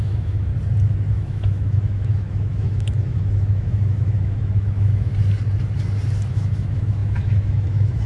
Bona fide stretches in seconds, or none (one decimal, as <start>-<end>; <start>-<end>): 0.5-1.1; 5.1-6.3